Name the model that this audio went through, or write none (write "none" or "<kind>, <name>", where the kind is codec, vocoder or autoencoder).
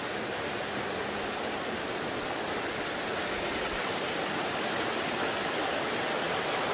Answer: none